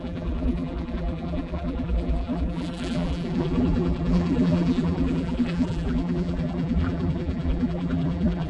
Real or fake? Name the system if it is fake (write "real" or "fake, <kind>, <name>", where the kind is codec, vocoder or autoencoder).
fake, vocoder, BigVGAN v2